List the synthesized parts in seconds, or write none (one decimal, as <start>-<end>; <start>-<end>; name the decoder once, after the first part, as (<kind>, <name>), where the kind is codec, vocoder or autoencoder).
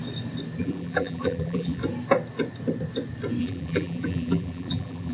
0.6-1.8 (vocoder, BigVGAN v2); 3.4-5.1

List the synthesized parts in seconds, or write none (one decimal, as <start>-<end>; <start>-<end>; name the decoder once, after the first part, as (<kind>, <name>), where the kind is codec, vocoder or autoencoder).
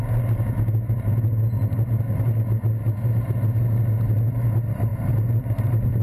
none